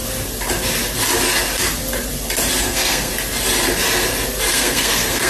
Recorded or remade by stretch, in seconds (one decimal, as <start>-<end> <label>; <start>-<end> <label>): 0.0-2.6 recorded; 2.6-3.1 remade; 3.1-4.5 recorded; 4.5-5.3 remade